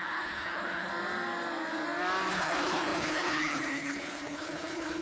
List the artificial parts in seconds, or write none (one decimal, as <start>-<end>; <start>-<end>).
0.0-0.9; 2.3-5.0